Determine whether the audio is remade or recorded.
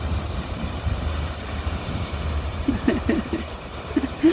remade